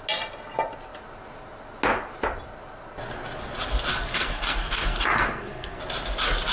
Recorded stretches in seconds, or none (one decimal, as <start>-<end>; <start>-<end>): 0.0-3.9; 5.8-6.5